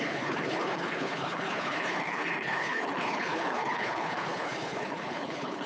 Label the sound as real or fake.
fake